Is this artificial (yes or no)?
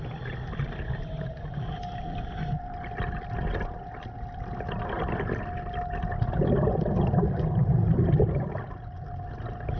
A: no